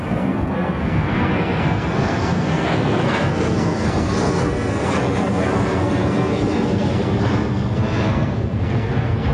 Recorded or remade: remade